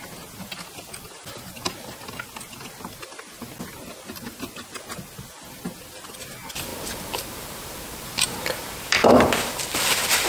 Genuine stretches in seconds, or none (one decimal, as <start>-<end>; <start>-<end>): 0.0-6.7